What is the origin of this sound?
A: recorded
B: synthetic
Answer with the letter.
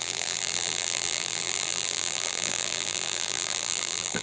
B